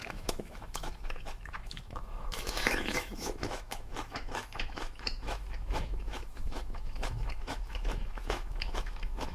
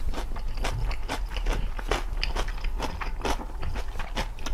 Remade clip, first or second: first